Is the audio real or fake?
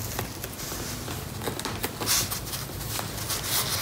real